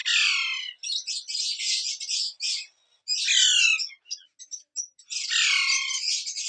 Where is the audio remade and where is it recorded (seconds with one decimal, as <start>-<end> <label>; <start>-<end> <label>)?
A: 0.0-6.5 recorded